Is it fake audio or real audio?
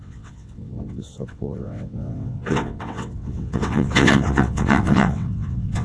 fake